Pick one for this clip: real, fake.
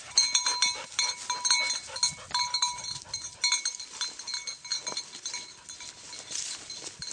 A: real